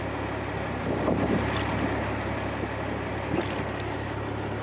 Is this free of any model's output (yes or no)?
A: yes